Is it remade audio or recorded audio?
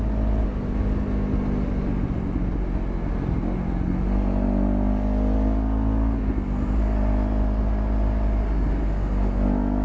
recorded